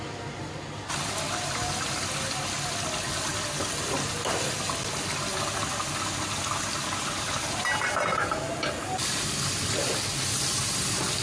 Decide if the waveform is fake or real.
real